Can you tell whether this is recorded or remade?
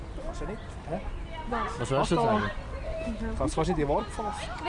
recorded